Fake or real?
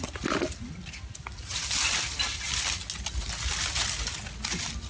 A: real